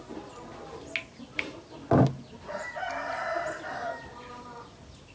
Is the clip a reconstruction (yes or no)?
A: no